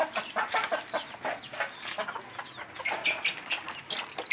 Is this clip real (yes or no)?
yes